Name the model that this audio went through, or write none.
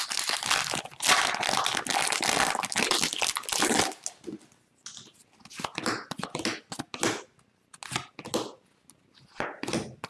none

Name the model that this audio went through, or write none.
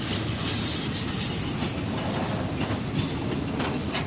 none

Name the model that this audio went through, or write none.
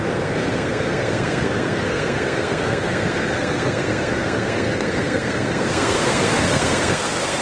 codec, SNAC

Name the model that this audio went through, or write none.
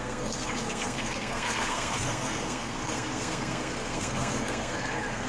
codec, SNAC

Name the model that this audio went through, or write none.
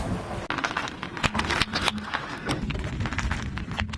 none